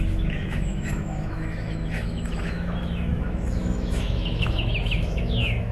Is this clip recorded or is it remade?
remade